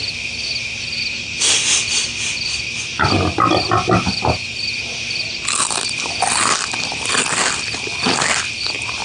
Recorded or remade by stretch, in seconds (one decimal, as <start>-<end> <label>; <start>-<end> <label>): 0.0-9.0 recorded